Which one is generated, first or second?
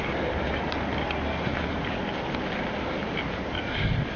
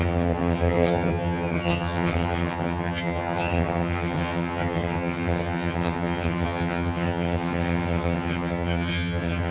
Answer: second